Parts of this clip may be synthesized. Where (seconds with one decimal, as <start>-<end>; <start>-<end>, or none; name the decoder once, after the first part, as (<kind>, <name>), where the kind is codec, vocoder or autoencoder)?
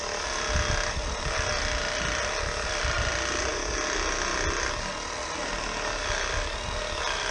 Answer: none